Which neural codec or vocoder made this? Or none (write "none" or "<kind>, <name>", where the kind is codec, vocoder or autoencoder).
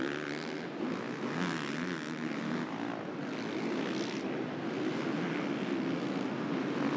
none